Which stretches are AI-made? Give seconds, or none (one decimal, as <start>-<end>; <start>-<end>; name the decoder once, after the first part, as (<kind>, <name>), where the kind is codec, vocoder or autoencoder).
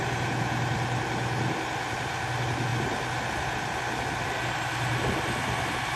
none